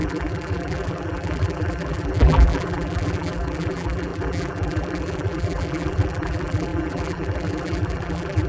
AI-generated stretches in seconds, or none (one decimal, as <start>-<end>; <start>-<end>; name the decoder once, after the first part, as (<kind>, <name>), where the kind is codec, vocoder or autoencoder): 0.0-8.5 (vocoder, BigVGAN v2)